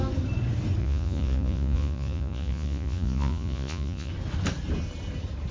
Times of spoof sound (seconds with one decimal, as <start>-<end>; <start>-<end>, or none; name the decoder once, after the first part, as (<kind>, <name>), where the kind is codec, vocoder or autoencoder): 0.8-4.1 (vocoder, Vocos)